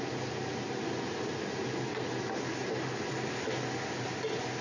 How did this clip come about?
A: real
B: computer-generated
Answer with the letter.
A